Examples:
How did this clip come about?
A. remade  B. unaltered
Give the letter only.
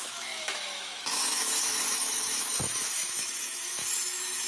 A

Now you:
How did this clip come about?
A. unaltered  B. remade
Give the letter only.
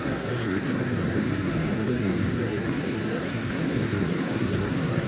B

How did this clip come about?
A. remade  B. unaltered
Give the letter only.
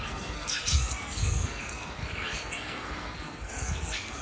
A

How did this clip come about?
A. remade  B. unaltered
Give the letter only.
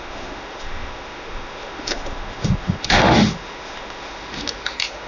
A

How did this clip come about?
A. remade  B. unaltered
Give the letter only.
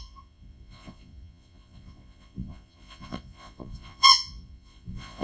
A